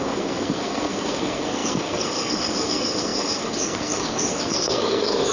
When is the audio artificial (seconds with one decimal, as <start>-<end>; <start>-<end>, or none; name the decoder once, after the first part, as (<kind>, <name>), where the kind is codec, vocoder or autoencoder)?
0.0-5.3 (codec, SNAC)